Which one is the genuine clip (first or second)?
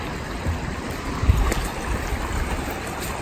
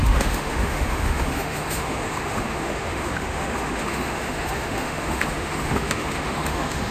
first